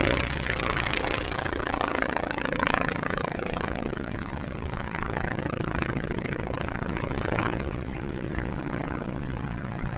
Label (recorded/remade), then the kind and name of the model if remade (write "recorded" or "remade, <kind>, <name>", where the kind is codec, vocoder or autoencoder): remade, vocoder, WaveNeXt